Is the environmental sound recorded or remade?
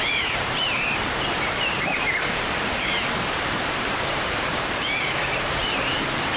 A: remade